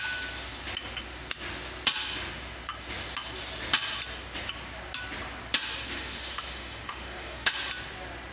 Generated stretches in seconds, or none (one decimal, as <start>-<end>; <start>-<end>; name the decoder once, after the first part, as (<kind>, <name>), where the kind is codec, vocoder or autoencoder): 5.9-7.5 (autoencoder, DAC-VAE)